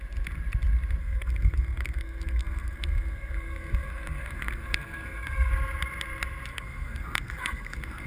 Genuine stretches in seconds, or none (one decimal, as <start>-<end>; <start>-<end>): 0.0-1.0; 5.5-6.5